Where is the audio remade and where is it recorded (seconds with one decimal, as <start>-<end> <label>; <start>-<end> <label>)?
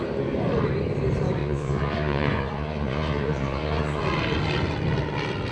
0.0-1.4 recorded; 1.4-4.0 remade; 4.0-5.5 recorded